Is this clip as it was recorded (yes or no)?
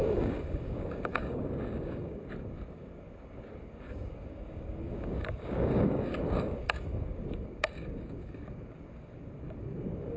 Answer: no